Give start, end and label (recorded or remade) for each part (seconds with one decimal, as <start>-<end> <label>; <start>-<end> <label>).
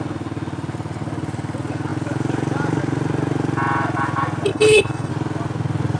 0.0-4.5 recorded; 4.5-5.1 remade; 5.1-6.0 recorded